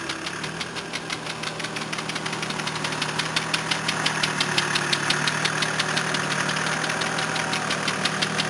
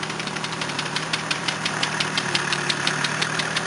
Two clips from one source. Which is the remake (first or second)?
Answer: second